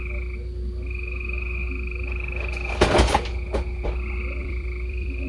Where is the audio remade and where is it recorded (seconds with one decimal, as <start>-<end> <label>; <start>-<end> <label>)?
0.0-4.4 recorded; 4.4-5.3 remade